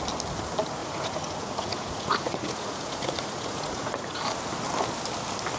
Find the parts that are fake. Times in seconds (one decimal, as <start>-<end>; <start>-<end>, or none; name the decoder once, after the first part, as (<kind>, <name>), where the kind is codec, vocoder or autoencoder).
0.8-4.2 (vocoder, Vocos)